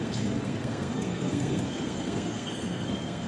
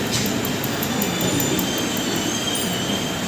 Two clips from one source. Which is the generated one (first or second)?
first